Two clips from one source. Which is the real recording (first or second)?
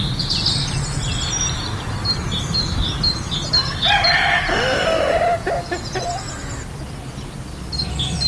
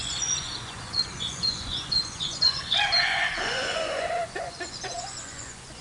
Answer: first